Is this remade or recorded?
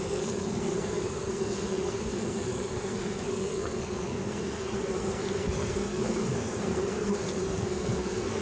remade